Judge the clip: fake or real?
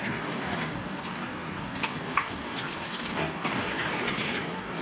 fake